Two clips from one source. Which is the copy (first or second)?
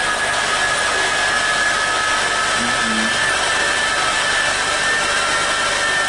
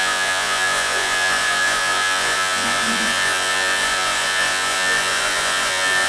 second